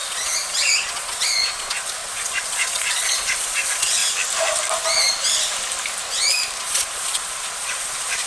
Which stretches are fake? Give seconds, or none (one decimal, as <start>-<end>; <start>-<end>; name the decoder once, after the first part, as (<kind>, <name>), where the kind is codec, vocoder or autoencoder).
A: 0.0-4.0 (vocoder, Vocos); 6.6-8.3